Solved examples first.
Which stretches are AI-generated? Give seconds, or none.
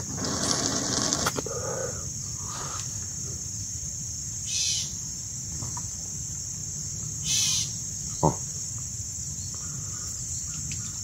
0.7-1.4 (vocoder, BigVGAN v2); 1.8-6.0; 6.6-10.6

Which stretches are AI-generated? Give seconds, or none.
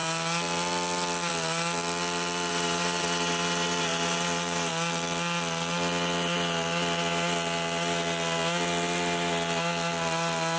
2.5-4.7 (vocoder, BigVGAN v2)